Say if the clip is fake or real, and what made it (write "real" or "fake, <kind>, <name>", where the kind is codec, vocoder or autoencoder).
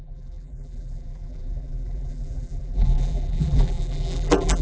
fake, vocoder, BigVGAN v2